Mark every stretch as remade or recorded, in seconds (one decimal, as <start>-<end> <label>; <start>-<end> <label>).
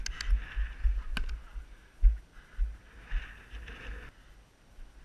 0.0-5.0 recorded